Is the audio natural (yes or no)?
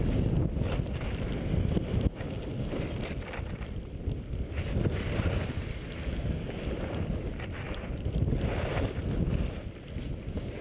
yes